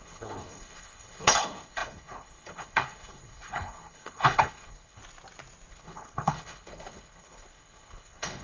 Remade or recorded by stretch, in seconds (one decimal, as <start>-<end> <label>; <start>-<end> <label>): 0.0-5.0 remade; 5.0-5.7 recorded; 5.7-8.4 remade